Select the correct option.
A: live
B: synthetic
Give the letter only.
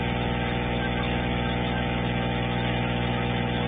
A